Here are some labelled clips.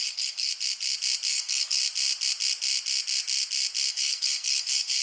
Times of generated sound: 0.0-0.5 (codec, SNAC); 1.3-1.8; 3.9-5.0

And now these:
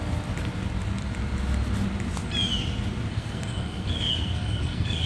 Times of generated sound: 3.1-5.1 (codec, SNAC)

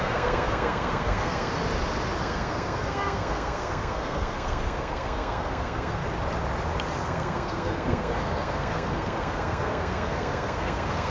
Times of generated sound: 0.0-1.5 (codec, SNAC); 2.2-6.0; 7.0-11.1

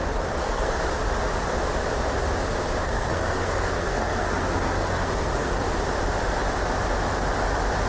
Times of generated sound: 0.4-1.0 (codec, SNAC); 2.8-5.6